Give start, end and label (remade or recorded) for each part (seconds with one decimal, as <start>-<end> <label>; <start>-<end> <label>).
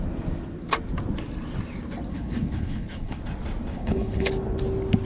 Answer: 0.0-2.1 recorded; 2.1-3.2 remade; 3.2-3.7 recorded; 3.7-4.3 remade; 4.3-5.0 recorded